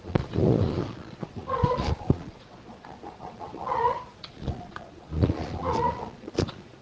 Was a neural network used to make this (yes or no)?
yes